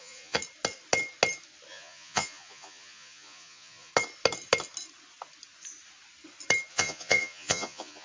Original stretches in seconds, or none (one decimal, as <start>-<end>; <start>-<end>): 0.4-1.7; 3.9-6.7